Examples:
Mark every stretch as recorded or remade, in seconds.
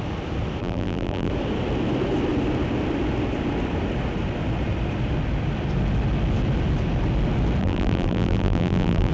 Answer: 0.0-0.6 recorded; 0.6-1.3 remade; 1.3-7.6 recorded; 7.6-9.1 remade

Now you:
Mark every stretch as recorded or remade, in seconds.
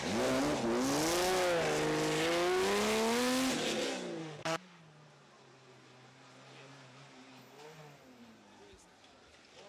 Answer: 0.0-4.2 recorded; 4.2-4.8 remade; 4.8-9.7 recorded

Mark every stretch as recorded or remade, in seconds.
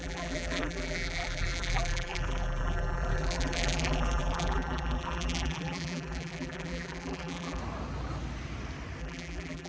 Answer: 0.0-7.6 remade; 7.6-9.0 recorded; 9.0-9.7 remade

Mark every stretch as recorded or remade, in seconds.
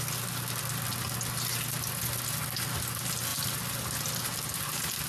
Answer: 0.0-3.3 recorded; 3.3-3.8 remade; 3.8-5.1 recorded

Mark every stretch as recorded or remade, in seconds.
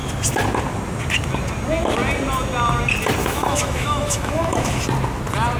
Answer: 0.0-3.2 recorded; 3.2-4.8 remade; 4.8-5.6 recorded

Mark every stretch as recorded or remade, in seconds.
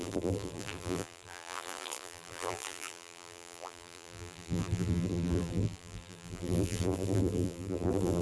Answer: 0.0-8.2 remade